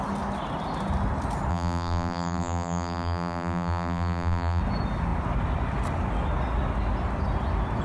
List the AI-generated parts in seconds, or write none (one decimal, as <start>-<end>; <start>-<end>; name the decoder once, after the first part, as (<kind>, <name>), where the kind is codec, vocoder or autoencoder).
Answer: 1.5-4.6 (vocoder, BigVGAN v2)